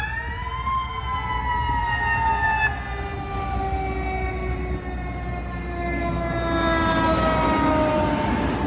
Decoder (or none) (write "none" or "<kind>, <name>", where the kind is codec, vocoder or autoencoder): none